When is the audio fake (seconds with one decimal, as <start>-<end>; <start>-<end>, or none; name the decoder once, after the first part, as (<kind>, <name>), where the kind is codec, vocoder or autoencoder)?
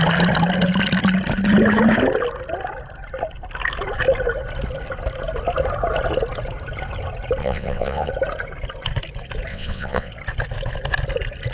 7.4-8.1 (vocoder, WaveNeXt); 9.5-10.1